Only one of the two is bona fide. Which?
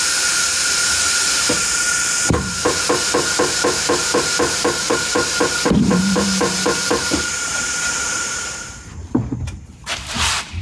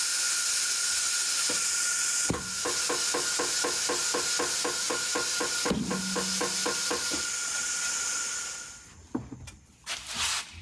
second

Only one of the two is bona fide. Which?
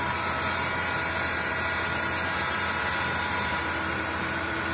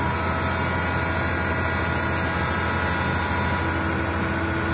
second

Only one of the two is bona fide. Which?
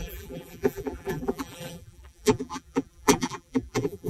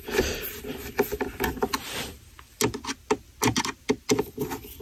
second